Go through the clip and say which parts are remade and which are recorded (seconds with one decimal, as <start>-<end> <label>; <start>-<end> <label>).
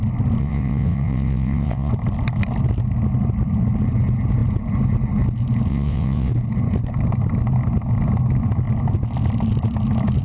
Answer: 0.0-0.4 recorded; 0.4-1.9 remade; 1.9-5.7 recorded; 5.7-6.3 remade; 6.3-10.2 recorded